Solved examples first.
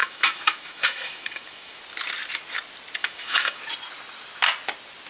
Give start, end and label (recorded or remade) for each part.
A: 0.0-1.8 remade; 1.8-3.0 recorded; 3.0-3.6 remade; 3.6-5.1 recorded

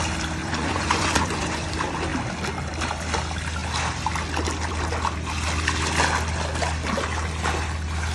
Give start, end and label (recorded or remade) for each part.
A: 0.0-0.4 recorded; 0.4-1.7 remade; 1.7-8.1 recorded

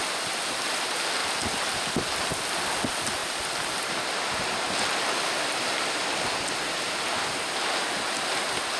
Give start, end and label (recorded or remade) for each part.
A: 0.0-8.8 recorded

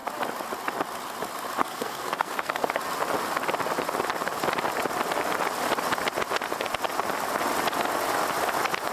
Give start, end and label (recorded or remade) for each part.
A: 0.0-1.6 recorded; 1.6-2.8 remade; 2.8-8.9 recorded

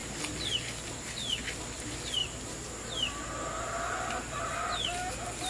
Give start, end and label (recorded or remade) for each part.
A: 0.0-5.5 recorded

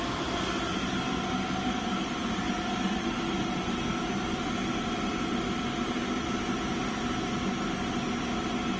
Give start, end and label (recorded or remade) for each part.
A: 0.0-8.8 recorded

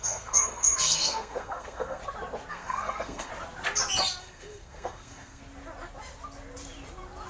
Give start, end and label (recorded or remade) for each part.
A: 0.0-2.0 remade; 2.0-2.5 recorded; 2.5-3.3 remade; 3.3-4.2 recorded; 4.2-5.4 remade; 5.4-7.3 recorded

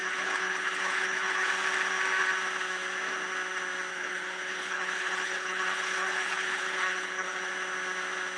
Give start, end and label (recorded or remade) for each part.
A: 0.0-1.5 remade; 1.5-3.9 recorded; 3.9-7.5 remade; 7.5-8.4 recorded